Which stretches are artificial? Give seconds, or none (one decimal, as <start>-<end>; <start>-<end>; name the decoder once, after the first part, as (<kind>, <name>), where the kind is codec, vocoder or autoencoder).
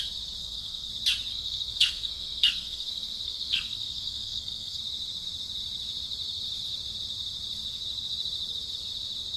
0.4-0.9 (codec, SNAC); 1.3-4.8